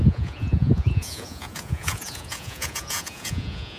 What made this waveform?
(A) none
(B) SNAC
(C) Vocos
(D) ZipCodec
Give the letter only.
C